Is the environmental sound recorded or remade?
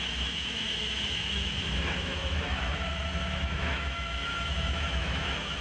remade